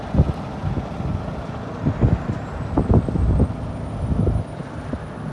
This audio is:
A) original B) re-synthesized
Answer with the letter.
A